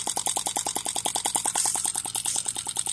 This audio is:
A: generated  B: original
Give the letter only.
B